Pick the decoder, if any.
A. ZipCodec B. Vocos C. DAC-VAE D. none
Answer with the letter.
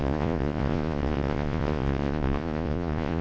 B